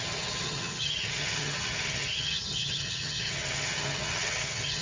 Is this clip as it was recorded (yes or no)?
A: no